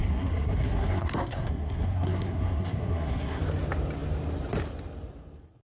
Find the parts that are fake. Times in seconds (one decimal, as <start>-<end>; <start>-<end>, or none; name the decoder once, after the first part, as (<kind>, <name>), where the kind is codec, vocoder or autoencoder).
0.0-3.4 (codec, SNAC)